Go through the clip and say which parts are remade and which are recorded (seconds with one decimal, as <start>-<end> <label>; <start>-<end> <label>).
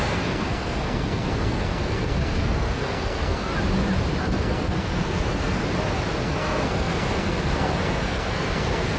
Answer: 0.0-3.5 remade; 3.5-4.2 recorded; 4.2-5.6 remade; 5.6-6.2 recorded; 6.2-9.0 remade